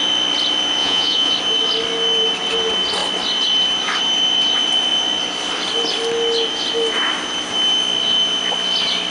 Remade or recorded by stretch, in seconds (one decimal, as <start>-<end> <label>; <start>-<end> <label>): 0.0-0.8 recorded; 0.8-1.3 remade; 1.3-9.1 recorded